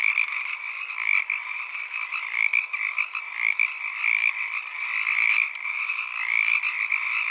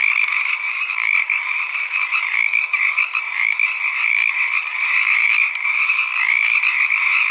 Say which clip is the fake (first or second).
second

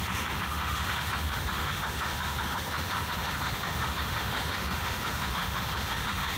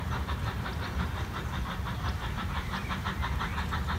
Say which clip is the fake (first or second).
first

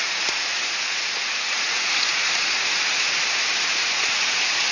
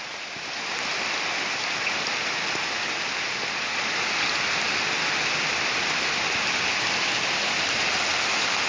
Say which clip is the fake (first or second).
first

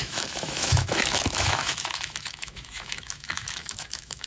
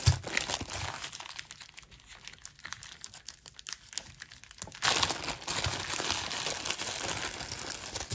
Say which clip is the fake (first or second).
first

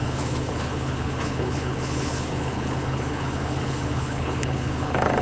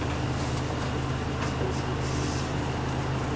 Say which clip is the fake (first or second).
first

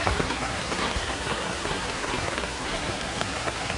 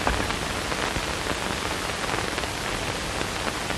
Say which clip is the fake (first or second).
first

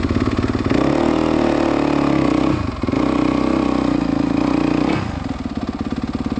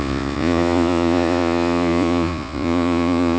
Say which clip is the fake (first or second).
second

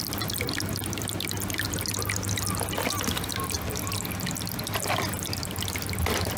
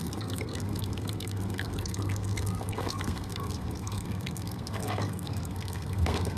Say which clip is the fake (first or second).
second